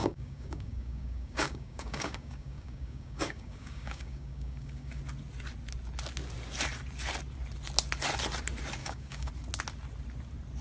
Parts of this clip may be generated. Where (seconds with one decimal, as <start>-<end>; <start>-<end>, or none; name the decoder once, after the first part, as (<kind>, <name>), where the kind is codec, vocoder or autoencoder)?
0.0-5.0 (codec, DAC); 8.8-9.3

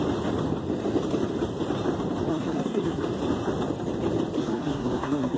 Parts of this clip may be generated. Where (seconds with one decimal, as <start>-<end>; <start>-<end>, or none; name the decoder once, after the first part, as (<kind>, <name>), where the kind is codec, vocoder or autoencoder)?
2.3-3.0 (codec, SNAC); 4.4-5.4

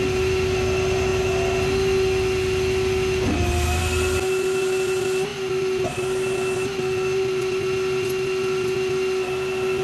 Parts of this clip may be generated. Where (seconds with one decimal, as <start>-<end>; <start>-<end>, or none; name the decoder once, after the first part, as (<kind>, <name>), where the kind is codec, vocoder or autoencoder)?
none

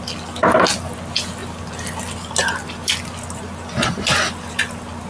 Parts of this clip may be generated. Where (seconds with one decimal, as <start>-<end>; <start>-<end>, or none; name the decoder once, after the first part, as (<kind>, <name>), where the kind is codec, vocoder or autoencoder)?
none

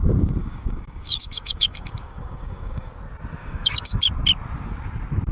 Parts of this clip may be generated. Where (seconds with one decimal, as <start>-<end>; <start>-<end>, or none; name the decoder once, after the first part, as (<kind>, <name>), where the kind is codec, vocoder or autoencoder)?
0.4-2.9 (codec, DAC); 3.4-4.0